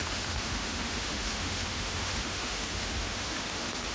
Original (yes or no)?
no